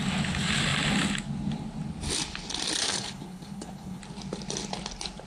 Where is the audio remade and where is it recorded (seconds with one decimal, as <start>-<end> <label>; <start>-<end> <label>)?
0.0-2.8 recorded; 2.8-4.0 remade; 4.0-5.3 recorded